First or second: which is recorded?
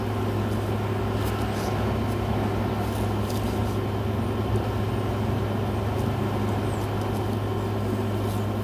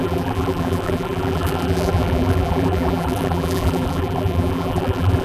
first